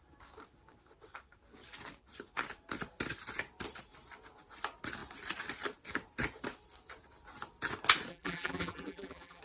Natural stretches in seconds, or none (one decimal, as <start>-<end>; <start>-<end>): 0.0-8.1